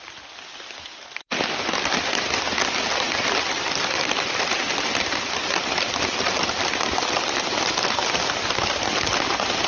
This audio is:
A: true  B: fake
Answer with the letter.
B